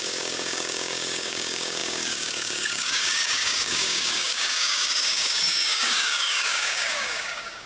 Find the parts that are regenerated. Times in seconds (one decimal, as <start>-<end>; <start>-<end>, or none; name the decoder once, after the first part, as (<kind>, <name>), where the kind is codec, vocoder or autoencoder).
0.0-7.7 (codec, DAC)